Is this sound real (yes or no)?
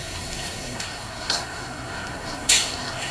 no